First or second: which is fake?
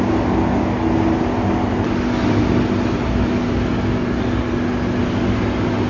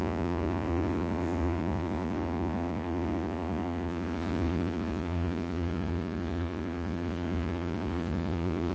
second